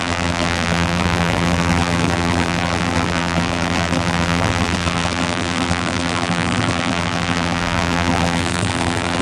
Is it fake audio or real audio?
fake